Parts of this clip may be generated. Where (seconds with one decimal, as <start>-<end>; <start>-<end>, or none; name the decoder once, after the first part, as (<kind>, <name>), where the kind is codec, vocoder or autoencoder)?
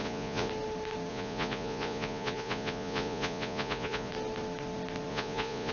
0.0-0.5 (vocoder, Vocos); 1.1-4.1; 5.1-5.7